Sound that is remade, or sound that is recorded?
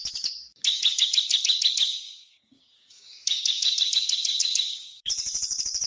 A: remade